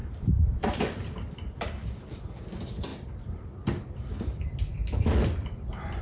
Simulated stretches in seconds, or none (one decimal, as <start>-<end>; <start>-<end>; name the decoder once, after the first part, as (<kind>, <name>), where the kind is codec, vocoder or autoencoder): 0.0-1.3 (vocoder, BigVGAN v2); 2.9-6.0